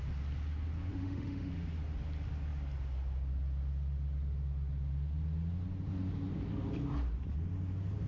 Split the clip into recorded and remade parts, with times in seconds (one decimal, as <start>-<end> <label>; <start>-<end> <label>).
0.0-0.9 recorded; 0.9-1.5 remade; 1.5-8.1 recorded